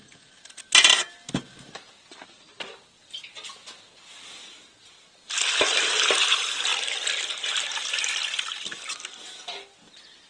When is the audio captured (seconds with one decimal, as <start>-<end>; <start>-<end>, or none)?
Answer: 0.0-10.3